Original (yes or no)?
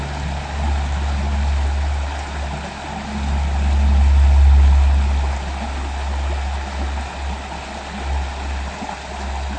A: yes